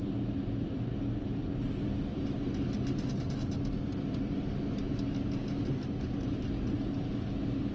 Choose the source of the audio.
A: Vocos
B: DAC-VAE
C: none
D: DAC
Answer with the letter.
C